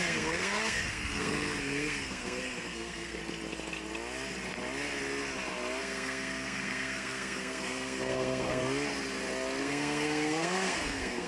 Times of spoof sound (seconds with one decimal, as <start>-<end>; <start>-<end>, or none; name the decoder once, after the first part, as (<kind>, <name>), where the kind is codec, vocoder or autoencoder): 0.0-3.2 (codec, SNAC); 5.8-8.6; 9.6-11.3